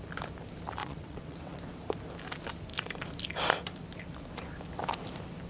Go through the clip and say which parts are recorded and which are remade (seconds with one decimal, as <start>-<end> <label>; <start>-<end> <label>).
0.0-0.8 recorded; 0.8-1.6 remade; 1.6-5.5 recorded